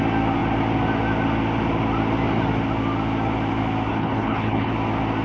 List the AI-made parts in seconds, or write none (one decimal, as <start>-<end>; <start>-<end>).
3.9-4.7